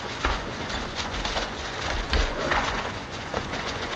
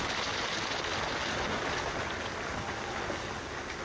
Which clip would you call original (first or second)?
second